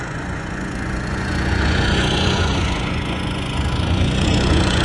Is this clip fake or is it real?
fake